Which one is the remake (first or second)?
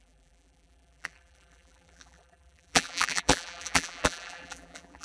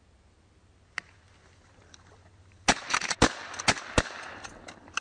first